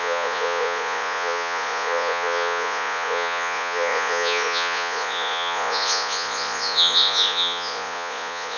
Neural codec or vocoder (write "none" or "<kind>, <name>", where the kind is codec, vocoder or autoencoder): vocoder, Vocos